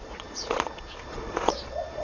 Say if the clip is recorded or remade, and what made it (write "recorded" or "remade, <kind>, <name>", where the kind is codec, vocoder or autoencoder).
remade, vocoder, Vocos